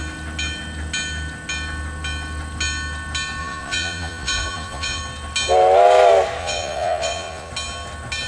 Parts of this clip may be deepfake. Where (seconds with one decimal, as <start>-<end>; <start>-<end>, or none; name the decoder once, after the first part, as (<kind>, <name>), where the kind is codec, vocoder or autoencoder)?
3.4-5.0 (vocoder, Vocos); 6.4-7.5